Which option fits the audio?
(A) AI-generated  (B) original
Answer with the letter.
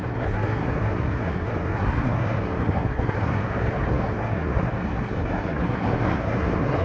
A